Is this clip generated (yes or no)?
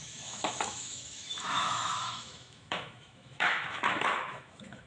yes